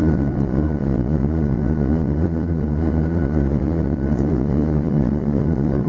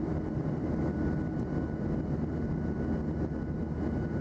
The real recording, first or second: second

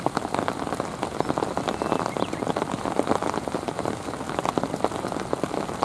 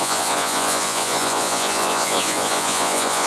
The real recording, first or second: first